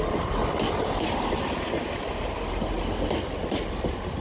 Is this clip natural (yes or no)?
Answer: yes